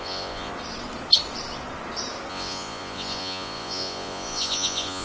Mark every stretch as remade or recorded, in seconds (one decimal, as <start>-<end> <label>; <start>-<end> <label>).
0.0-0.5 remade; 0.5-2.3 recorded; 2.3-5.0 remade